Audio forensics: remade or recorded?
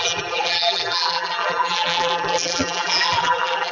remade